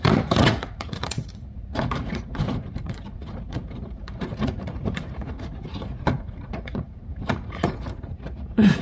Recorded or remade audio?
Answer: remade